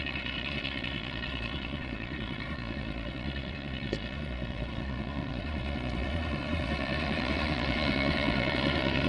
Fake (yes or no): yes